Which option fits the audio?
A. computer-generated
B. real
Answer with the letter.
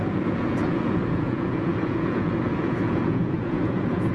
A